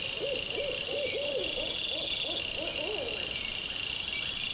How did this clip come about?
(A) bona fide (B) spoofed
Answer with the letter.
A